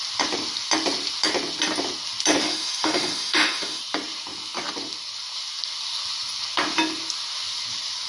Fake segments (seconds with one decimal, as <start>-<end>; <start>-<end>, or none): 2.4-3.8